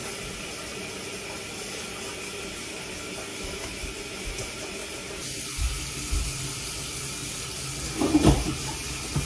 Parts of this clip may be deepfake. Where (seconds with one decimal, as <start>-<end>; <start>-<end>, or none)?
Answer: 3.3-3.8

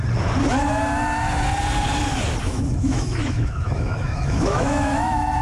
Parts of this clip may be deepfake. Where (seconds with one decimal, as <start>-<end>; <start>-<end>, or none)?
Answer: 2.4-5.4